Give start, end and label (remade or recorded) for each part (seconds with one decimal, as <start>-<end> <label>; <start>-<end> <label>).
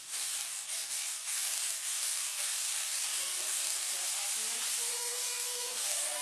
0.0-3.9 remade; 3.9-4.9 recorded; 4.9-6.2 remade